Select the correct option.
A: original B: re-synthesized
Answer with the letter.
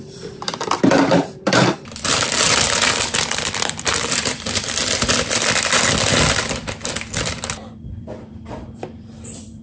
B